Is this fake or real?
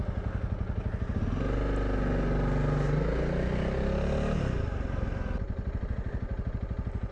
real